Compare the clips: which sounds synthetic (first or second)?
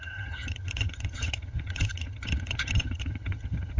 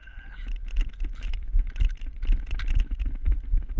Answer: first